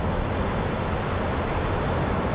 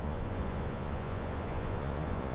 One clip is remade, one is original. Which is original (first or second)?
first